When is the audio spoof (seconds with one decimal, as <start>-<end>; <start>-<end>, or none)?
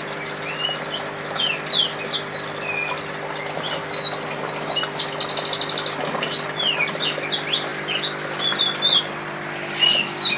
none